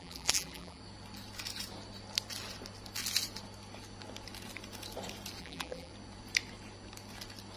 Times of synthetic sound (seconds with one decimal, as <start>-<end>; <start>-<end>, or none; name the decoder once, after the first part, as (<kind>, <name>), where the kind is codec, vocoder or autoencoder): 0.0-0.8 (vocoder, BigVGAN v2); 5.4-5.9